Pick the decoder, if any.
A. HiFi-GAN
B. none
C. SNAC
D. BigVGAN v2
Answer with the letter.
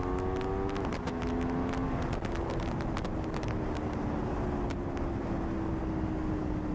B